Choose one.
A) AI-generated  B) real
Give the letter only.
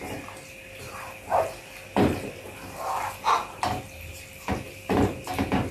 B